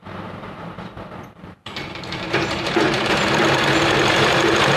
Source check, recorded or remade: remade